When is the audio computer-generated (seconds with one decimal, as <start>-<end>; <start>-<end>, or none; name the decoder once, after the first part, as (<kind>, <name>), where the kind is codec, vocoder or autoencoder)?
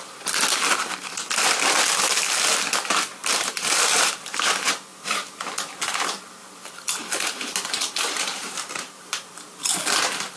3.2-4.1 (vocoder, BigVGAN v2); 4.9-5.5; 6.4-9.6